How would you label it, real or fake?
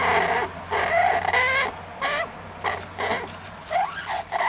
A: real